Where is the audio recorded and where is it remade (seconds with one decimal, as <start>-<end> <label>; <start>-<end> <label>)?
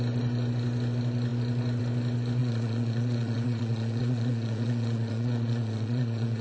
0.0-2.4 recorded; 2.4-6.4 remade